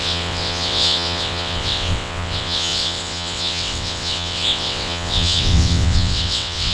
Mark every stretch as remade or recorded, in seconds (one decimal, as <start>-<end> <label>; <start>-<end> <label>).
0.0-6.7 remade